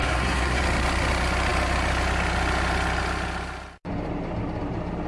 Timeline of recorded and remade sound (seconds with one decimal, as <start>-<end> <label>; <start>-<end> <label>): 0.0-0.6 remade; 0.6-5.1 recorded